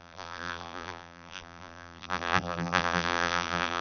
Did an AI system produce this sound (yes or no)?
yes